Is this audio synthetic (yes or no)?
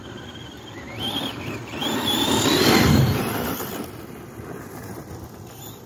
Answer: no